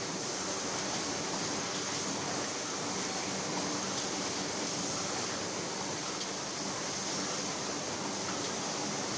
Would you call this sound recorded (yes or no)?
yes